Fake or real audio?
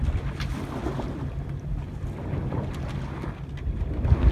real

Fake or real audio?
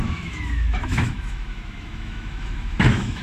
fake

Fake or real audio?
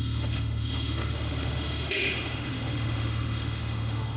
fake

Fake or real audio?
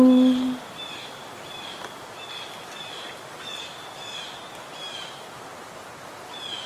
real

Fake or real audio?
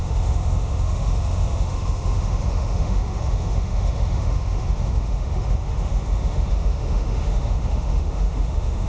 fake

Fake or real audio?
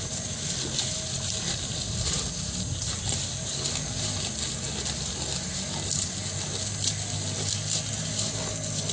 real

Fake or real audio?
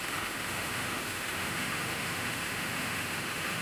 fake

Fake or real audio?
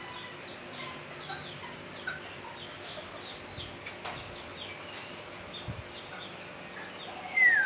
real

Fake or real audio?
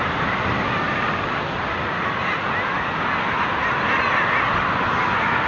real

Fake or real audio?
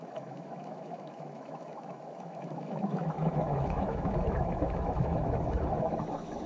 fake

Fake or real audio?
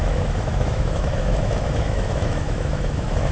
fake